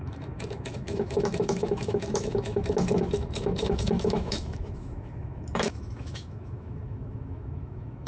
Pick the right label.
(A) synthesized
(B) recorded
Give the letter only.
A